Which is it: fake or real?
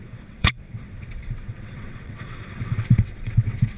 fake